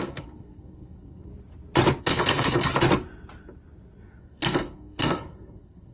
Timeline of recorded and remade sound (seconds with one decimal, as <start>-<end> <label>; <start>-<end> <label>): 0.0-1.3 remade; 1.3-2.0 recorded; 2.0-2.7 remade; 2.7-4.2 recorded; 4.2-5.9 remade